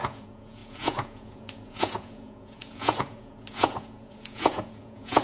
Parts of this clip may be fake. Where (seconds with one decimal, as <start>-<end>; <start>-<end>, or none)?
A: 0.0-5.2

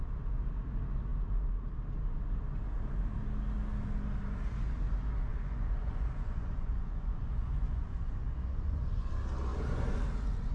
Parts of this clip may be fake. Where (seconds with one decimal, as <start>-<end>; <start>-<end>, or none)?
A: 5.3-9.1; 9.5-10.0